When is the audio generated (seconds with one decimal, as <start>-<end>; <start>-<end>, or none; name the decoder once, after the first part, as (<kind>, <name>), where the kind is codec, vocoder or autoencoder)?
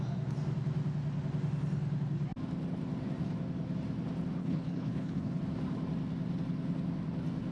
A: 4.4-5.4 (codec, HILCodec)